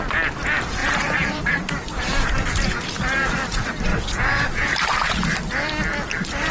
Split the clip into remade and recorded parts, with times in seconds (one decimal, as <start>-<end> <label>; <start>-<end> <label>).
0.0-0.8 recorded; 0.8-3.3 remade; 3.3-3.9 recorded; 3.9-5.4 remade; 5.4-6.5 recorded